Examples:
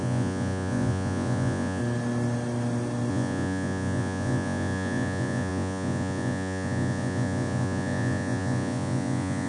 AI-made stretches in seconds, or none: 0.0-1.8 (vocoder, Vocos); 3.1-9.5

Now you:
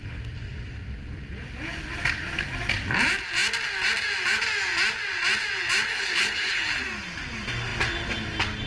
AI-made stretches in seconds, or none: 5.9-6.8 (codec, HILCodec)

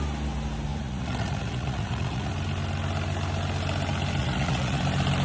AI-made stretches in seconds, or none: 0.7-2.3 (vocoder, Vocos); 4.2-4.8

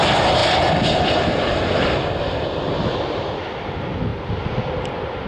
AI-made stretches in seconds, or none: none

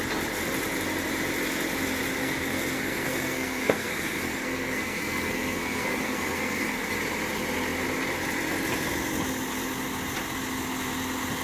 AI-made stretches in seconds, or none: 2.2-6.9 (codec, SNAC)

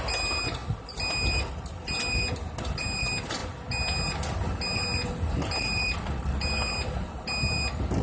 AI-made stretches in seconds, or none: none

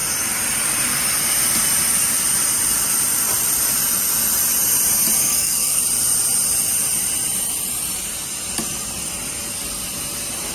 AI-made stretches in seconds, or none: 5.2-5.8 (codec, SNAC)

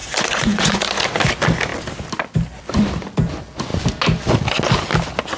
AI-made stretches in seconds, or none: 0.0-0.8 (vocoder, Vocos)